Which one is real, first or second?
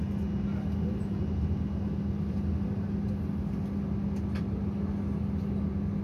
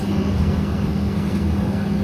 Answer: first